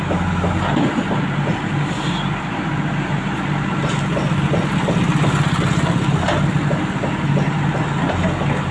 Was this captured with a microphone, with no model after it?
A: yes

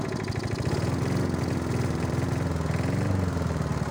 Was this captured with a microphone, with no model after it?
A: yes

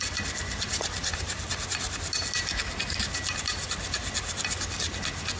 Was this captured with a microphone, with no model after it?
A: yes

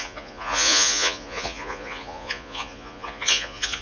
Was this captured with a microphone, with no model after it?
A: no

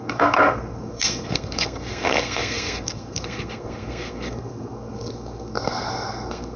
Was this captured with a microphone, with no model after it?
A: no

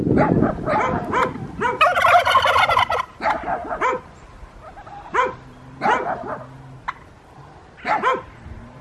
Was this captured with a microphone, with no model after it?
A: yes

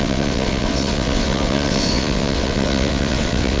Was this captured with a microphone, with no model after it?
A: no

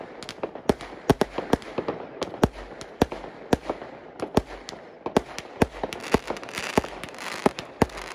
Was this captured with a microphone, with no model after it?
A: yes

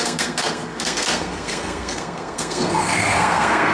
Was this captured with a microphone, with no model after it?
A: no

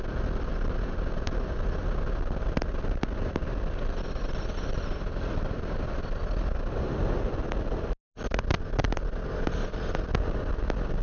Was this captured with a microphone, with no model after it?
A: yes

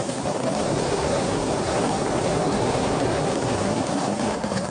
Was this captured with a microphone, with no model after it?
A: no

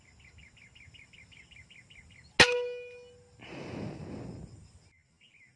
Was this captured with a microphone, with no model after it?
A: yes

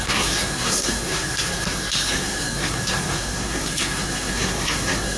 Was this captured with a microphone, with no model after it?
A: no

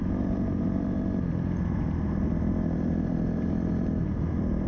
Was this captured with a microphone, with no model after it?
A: no